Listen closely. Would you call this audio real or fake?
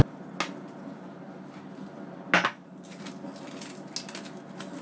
real